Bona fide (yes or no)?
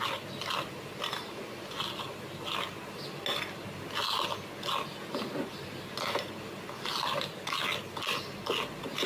yes